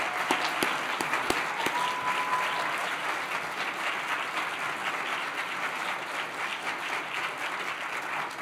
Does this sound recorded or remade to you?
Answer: recorded